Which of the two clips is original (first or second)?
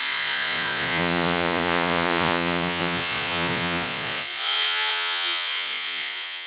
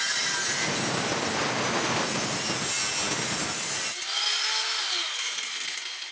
second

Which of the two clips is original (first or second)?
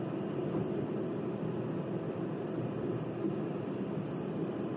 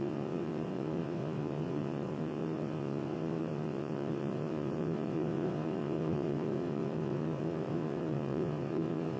first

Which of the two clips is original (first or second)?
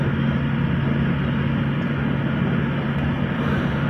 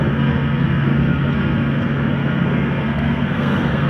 first